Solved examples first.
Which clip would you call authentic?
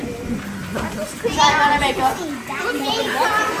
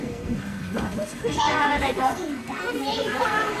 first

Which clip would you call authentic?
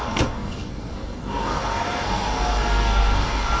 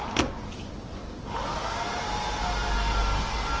second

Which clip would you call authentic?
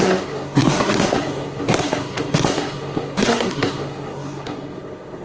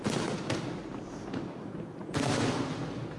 second